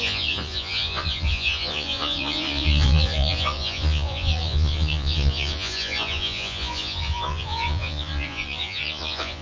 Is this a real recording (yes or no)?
no